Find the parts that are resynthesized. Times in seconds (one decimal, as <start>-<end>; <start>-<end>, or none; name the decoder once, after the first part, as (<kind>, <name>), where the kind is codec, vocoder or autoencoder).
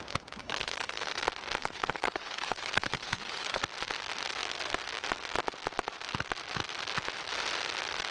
0.4-1.1 (codec, HILCodec); 1.6-3.6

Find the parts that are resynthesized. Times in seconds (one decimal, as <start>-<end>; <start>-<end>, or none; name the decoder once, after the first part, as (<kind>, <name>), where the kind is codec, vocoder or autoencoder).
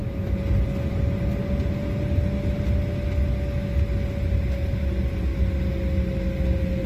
none